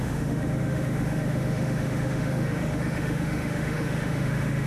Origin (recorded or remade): remade